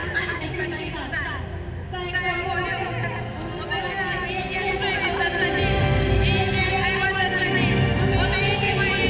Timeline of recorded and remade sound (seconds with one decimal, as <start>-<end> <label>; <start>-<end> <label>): 0.0-0.9 remade; 0.9-9.1 recorded